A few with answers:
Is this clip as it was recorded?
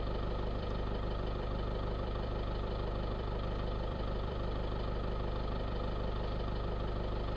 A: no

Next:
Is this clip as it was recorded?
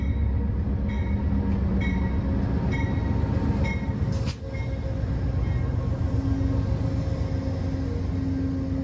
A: yes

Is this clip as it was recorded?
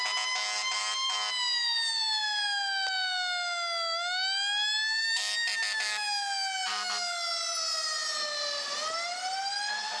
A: yes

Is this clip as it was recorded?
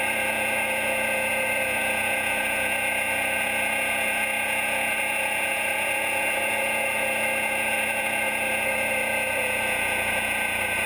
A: no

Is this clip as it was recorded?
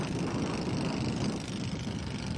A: yes